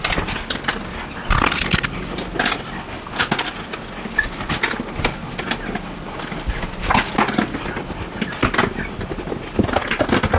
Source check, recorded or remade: recorded